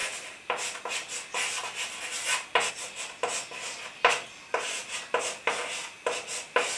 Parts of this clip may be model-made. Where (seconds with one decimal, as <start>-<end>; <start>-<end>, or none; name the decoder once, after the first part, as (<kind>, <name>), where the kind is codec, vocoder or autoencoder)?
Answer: none